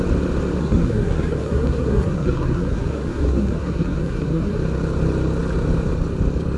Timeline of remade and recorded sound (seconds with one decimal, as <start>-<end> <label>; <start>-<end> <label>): 0.0-0.6 recorded; 0.6-4.6 remade; 4.6-6.6 recorded